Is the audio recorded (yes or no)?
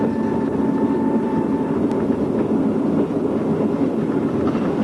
yes